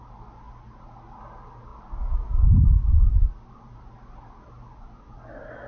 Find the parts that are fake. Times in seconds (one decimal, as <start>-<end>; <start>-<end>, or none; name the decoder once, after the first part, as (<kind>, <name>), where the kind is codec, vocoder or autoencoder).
none